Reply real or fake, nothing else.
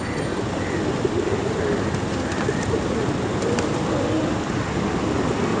real